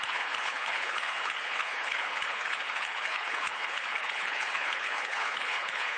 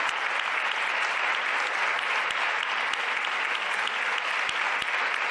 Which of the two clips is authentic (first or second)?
second